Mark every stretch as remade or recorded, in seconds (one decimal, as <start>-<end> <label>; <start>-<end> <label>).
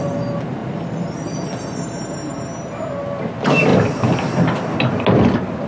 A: 0.0-5.7 recorded